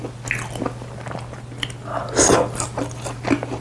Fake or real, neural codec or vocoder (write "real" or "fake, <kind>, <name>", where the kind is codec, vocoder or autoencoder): real